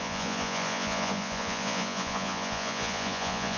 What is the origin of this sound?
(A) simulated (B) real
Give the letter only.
A